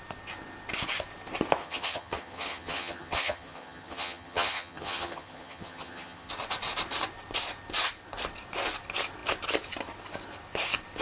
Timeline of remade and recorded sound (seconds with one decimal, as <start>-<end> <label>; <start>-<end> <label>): 0.0-1.6 recorded; 1.6-6.3 remade; 6.3-11.0 recorded